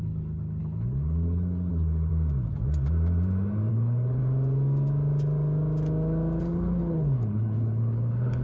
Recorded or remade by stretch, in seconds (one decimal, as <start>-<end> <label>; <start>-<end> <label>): 0.0-2.1 remade; 2.1-3.7 recorded; 3.7-4.2 remade; 4.2-6.4 recorded; 6.4-8.4 remade